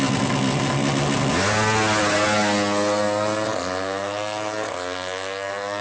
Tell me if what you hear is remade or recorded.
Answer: recorded